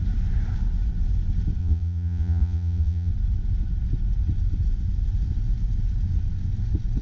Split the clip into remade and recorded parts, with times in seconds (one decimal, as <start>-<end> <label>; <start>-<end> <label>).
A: 0.0-1.6 recorded; 1.6-3.1 remade; 3.1-7.0 recorded